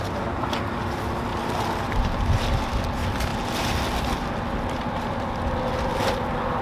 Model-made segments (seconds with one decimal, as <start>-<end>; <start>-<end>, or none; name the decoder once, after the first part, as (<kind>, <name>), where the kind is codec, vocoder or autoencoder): 1.3-2.7 (vocoder, BigVGAN v2)